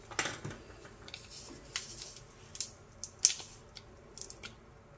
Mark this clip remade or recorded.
recorded